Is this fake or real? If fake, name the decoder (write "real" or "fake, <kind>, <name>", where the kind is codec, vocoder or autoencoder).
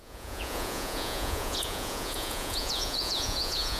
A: fake, vocoder, Vocos